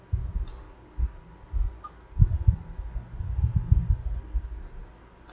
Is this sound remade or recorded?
recorded